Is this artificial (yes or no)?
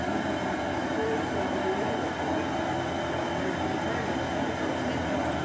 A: no